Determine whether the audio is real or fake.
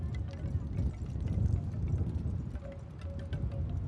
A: real